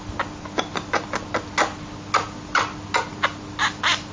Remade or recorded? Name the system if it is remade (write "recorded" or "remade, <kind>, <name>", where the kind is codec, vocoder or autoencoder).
recorded